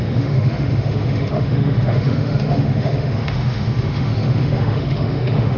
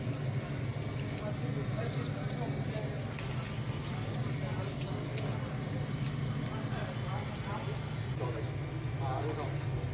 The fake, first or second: first